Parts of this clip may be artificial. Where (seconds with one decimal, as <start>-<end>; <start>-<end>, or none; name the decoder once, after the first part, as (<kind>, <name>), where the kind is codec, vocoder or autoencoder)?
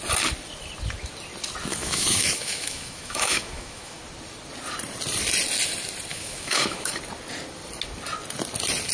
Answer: 1.7-4.0 (autoencoder, DAC-VAE); 6.1-6.9